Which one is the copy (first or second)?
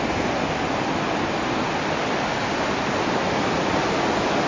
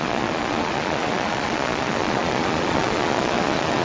second